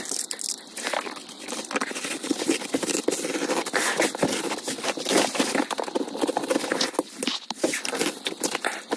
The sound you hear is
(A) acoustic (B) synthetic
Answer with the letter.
A